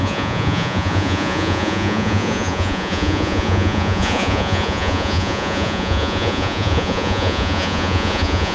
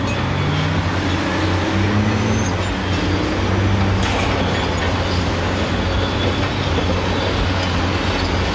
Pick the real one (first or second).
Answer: second